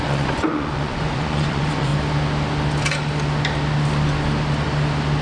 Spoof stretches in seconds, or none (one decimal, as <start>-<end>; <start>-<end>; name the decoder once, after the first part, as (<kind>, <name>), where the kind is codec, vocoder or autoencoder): 0.0-1.9 (vocoder, Vocos)